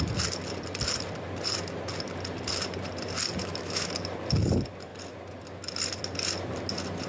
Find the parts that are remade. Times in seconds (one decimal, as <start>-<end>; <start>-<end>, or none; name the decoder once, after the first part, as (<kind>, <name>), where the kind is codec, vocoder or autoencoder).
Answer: 3.4-3.9 (autoencoder, DAC-VAE)